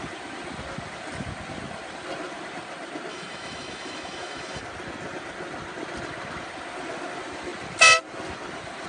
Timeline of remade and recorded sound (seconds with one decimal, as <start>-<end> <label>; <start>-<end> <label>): 0.0-3.1 recorded; 3.1-4.6 remade; 4.6-8.9 recorded